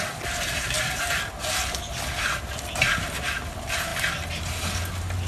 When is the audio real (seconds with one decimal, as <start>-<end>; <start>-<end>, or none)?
0.0-5.3